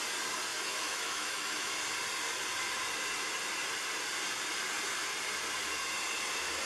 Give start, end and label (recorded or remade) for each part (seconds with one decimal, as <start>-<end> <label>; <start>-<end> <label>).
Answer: 0.0-0.5 recorded; 0.5-1.7 remade; 1.7-6.7 recorded